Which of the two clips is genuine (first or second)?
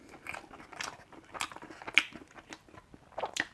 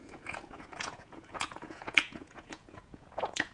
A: first